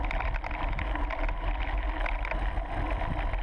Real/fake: real